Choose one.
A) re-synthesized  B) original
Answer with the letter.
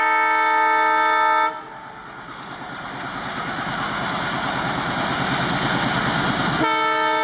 B